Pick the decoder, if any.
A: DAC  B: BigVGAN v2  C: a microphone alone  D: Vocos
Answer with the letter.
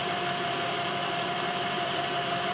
B